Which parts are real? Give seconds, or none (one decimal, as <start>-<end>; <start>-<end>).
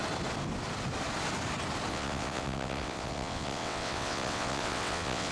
0.0-1.9